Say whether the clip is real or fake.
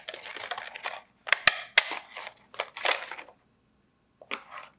real